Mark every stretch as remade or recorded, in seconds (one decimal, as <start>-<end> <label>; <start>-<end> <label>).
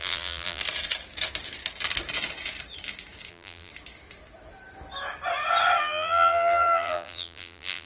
0.0-0.6 remade; 0.6-3.3 recorded; 3.3-3.7 remade; 3.7-5.8 recorded; 5.8-7.8 remade